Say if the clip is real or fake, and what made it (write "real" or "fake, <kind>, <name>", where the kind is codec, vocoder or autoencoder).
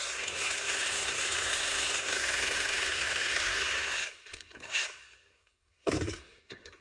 fake, codec, SNAC